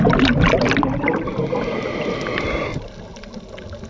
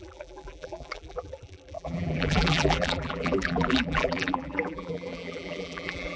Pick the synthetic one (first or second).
second